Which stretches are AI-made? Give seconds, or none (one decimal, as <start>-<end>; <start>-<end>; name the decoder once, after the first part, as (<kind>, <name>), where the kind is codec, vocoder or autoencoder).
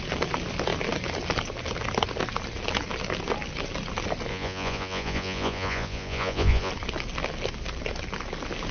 4.3-6.7 (vocoder, Vocos)